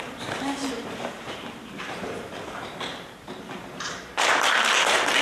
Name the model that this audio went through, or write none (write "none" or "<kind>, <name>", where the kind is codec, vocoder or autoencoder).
vocoder, BigVGAN v2